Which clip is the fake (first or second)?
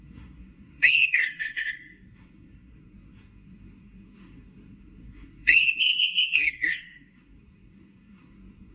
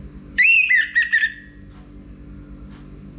first